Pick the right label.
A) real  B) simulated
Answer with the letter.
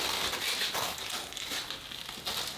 A